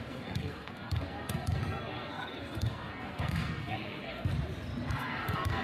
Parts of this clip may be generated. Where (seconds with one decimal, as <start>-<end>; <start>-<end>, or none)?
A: 0.0-4.3; 4.9-5.6